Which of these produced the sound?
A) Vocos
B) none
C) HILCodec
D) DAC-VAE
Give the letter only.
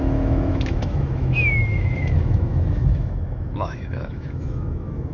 D